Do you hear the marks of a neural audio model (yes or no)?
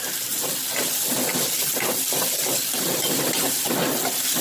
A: no